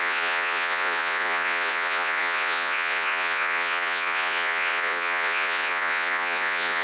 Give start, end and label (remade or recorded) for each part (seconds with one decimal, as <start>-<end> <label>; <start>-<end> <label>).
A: 0.0-6.8 remade